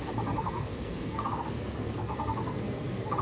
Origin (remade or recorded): remade